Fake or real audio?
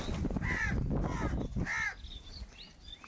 real